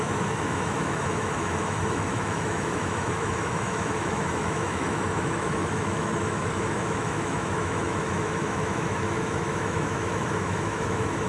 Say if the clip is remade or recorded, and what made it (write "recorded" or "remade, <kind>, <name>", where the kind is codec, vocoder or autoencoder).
remade, autoencoder, DAC-VAE